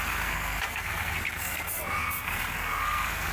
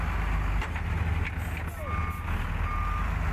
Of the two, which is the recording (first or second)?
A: second